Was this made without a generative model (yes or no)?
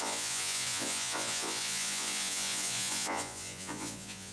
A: no